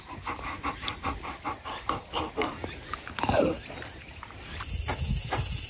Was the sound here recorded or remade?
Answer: recorded